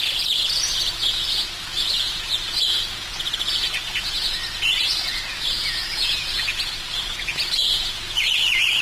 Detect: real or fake fake